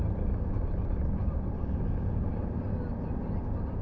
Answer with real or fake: real